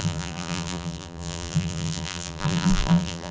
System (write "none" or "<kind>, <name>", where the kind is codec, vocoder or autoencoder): vocoder, BigVGAN v2